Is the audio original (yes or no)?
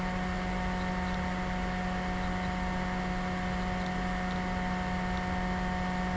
yes